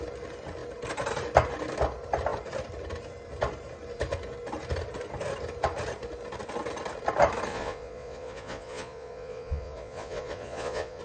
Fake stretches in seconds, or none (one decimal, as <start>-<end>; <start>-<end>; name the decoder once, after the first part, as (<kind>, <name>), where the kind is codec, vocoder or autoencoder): 7.5-11.0 (vocoder, Vocos)